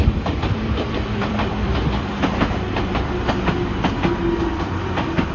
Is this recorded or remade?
remade